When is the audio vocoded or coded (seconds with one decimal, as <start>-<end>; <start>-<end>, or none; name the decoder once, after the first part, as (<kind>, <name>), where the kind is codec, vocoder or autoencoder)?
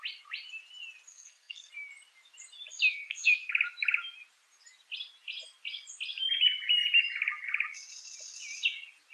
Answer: 1.1-1.7 (codec, SNAC); 2.9-3.5